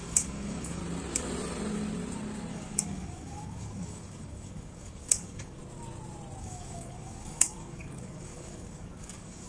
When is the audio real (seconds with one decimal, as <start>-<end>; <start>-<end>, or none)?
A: 0.8-2.5; 5.6-6.4